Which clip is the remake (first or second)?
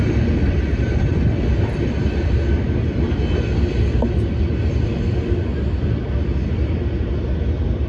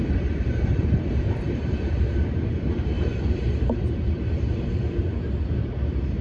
second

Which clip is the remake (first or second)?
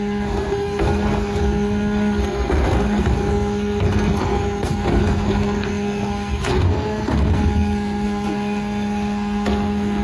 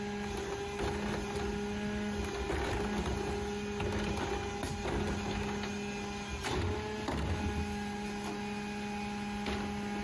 first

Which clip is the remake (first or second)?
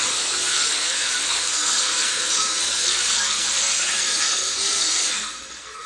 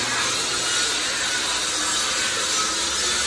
first